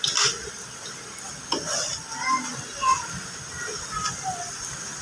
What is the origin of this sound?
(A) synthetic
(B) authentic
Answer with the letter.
B